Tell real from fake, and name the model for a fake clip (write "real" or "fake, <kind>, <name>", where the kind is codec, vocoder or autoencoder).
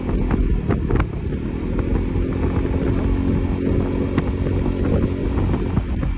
real